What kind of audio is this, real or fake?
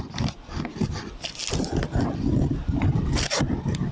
real